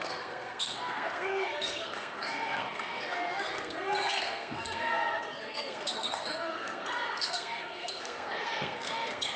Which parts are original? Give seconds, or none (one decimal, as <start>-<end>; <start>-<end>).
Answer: none